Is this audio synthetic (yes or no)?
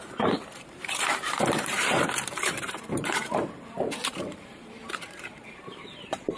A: yes